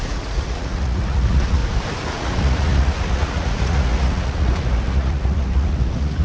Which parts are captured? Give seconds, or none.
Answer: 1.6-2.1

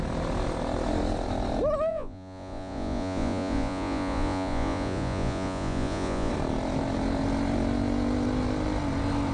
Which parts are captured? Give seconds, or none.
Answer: 0.0-1.9; 6.3-9.3

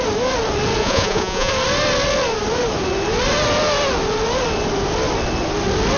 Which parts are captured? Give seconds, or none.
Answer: 0.0-0.8; 1.5-6.0

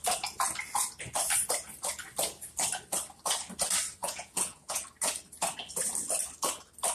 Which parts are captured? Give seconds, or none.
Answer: 0.0-4.0; 4.8-6.9

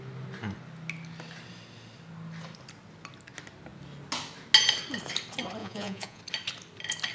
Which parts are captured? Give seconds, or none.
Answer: 0.0-5.6; 6.2-7.1